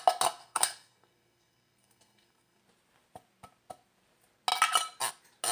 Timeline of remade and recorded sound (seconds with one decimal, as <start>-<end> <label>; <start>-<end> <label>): 0.0-0.4 recorded; 0.4-2.6 remade; 2.6-5.5 recorded